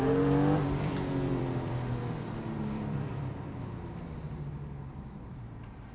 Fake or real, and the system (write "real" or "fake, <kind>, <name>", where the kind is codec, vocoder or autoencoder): fake, vocoder, BigVGAN v2